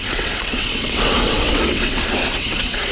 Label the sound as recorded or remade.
remade